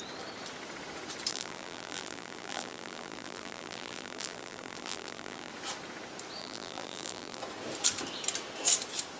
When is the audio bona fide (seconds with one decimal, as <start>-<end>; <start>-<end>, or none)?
0.0-1.3; 5.5-6.4; 7.4-9.2